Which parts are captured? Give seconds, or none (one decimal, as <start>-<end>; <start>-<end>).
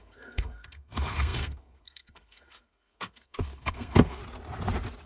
4.2-5.1